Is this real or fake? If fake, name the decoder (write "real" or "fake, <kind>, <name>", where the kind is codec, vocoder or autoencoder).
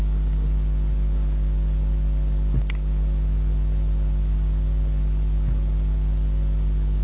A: real